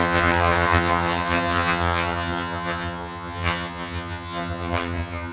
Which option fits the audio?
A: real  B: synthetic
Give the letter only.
B